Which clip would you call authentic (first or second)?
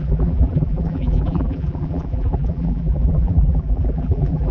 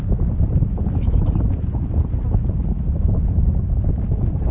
second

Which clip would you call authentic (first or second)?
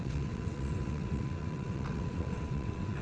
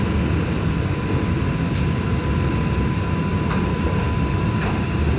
second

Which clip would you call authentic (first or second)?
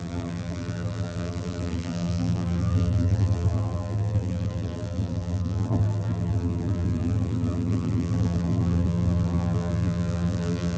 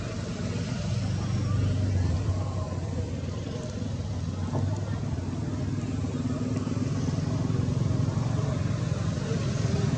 second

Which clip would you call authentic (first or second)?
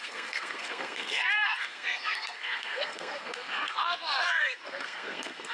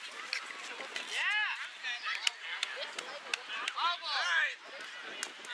second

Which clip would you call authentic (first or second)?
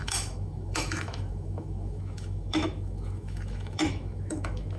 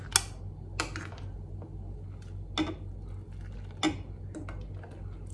second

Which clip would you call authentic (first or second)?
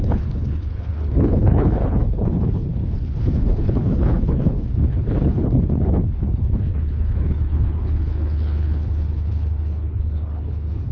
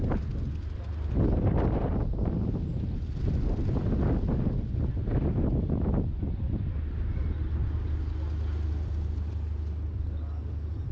second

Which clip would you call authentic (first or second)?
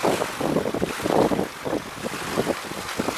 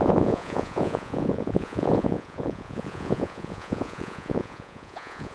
first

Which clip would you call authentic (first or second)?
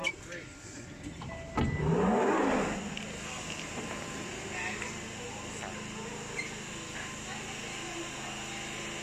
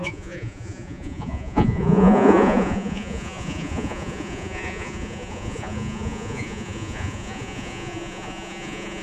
first